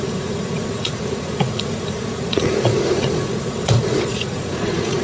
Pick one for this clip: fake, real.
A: fake